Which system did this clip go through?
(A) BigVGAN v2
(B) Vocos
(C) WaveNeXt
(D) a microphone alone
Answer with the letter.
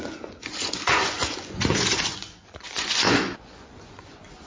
B